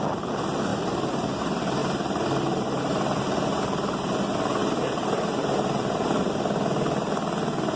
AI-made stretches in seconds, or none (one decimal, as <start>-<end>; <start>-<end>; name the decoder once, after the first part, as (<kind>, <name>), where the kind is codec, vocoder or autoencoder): 1.8-2.8 (vocoder, BigVGAN v2); 4.6-6.3